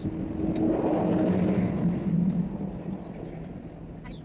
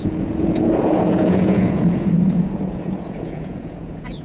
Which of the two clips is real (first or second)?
first